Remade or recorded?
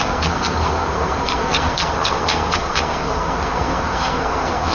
remade